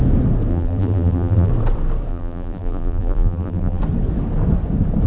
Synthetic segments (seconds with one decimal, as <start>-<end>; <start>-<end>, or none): 0.5-1.5; 2.1-3.8